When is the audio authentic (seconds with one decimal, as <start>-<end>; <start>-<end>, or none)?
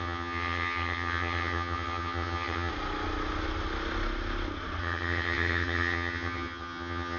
2.7-4.8